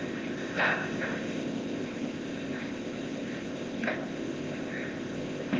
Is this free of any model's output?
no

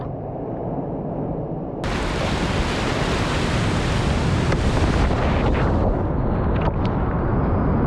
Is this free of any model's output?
yes